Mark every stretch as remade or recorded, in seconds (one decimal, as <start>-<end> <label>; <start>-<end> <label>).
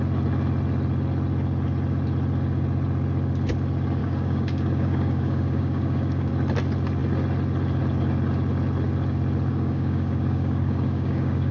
0.0-4.0 recorded; 4.0-6.3 remade; 6.3-9.5 recorded; 9.5-11.5 remade